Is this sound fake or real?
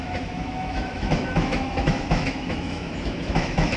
fake